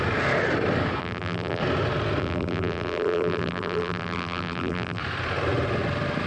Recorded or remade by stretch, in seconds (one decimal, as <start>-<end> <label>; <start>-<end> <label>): 0.0-1.0 recorded; 1.0-1.6 remade; 1.6-2.2 recorded; 2.2-5.0 remade; 5.0-6.3 recorded